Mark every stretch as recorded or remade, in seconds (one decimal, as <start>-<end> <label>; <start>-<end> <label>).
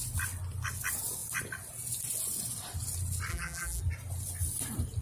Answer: 0.0-3.3 recorded; 3.3-3.8 remade; 3.8-5.0 recorded